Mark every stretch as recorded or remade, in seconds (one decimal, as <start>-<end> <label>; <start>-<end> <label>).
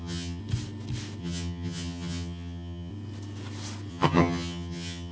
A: 0.0-0.4 remade; 0.4-1.2 recorded; 1.2-2.9 remade; 2.9-3.9 recorded; 3.9-5.1 remade